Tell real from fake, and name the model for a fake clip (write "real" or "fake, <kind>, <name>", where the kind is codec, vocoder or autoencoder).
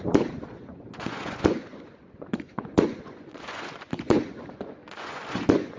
fake, vocoder, Vocos